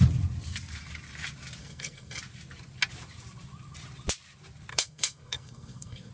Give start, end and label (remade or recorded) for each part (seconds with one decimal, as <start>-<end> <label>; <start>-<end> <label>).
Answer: 0.0-1.6 recorded; 1.6-2.2 remade; 2.2-4.7 recorded; 4.7-6.1 remade